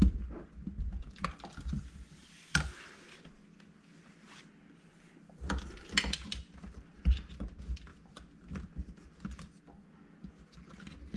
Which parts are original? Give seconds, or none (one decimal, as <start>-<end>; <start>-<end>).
0.0-11.2